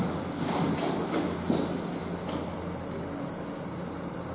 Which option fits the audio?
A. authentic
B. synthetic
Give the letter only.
A